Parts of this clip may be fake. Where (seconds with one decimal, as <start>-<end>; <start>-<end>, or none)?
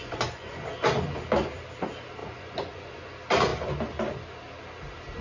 0.0-0.6; 2.2-3.1